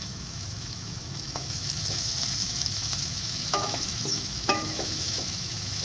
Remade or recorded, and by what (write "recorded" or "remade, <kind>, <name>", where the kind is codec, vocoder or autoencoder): remade, autoencoder, DAC-VAE